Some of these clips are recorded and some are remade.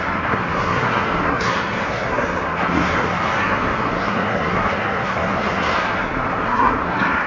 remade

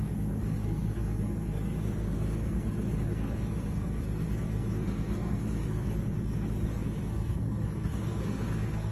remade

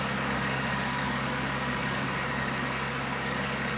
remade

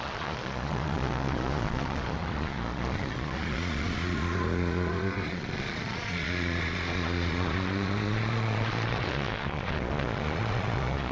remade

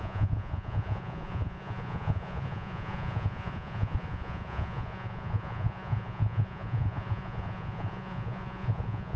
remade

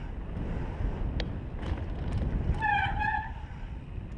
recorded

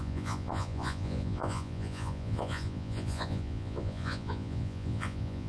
remade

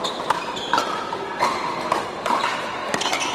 recorded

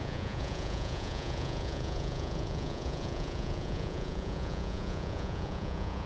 remade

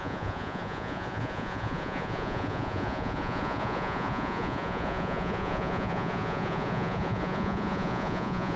remade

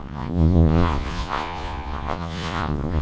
remade